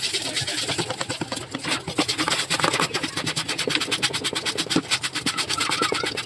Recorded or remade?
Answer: remade